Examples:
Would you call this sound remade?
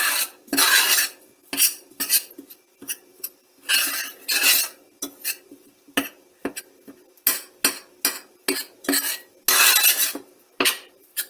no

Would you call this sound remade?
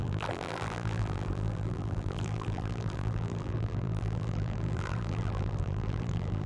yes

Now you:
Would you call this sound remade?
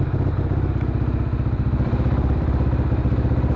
yes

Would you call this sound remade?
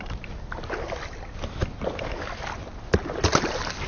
no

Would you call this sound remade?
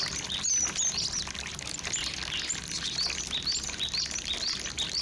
no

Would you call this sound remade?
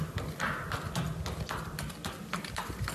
no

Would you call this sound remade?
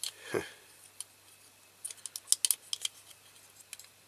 no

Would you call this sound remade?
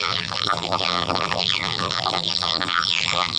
yes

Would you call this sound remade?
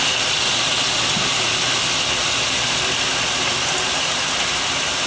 no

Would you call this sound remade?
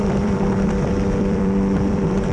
yes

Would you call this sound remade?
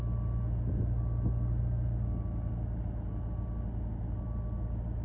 no